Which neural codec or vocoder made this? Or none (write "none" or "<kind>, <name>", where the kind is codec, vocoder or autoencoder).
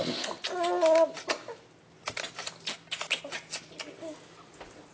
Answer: none